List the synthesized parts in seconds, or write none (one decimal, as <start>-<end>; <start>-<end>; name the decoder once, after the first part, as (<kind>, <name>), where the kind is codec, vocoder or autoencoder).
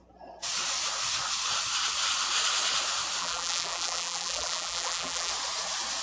3.2-5.3 (vocoder, BigVGAN v2)